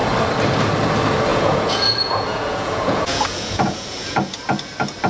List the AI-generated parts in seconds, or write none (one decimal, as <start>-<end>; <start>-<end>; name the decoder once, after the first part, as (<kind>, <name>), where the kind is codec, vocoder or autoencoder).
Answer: 1.3-4.4 (vocoder, Vocos)